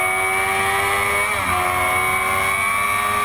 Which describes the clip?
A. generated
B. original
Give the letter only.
B